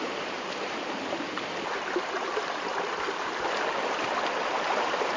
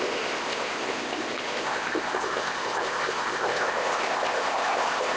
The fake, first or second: second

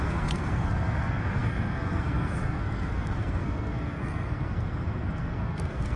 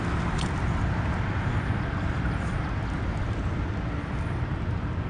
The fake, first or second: first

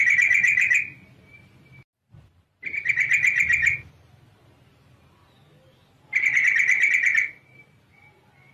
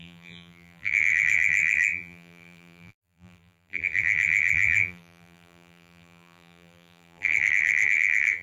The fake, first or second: second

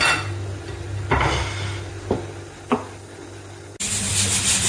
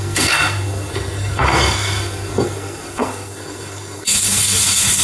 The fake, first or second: second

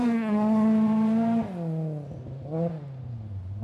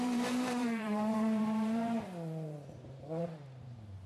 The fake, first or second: second